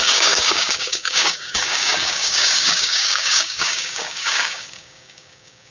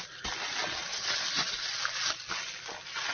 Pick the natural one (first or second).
second